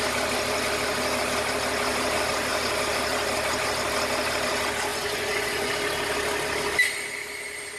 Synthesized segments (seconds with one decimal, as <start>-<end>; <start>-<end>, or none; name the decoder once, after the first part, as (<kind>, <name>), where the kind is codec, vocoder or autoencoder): 4.9-5.7 (vocoder, Vocos)